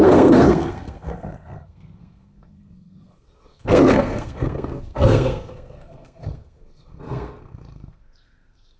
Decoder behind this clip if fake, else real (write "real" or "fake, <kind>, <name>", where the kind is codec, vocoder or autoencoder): fake, codec, SNAC